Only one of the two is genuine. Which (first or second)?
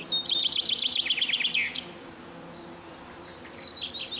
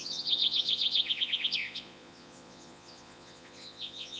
first